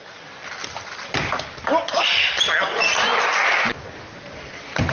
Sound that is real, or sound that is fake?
real